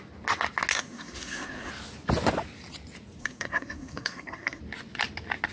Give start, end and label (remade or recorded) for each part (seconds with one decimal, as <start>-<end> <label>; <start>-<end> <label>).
0.0-0.7 recorded; 0.7-1.7 remade; 1.7-3.2 recorded; 3.2-4.6 remade; 4.6-5.5 recorded

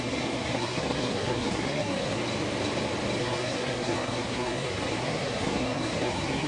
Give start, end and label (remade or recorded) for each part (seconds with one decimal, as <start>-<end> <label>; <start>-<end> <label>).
0.0-2.2 remade; 2.2-3.2 recorded; 3.2-6.5 remade

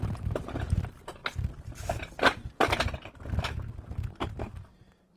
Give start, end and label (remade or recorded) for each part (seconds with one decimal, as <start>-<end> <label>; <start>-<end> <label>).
0.0-1.2 remade; 1.2-4.1 recorded; 4.1-5.2 remade